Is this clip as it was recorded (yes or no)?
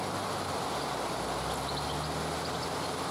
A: yes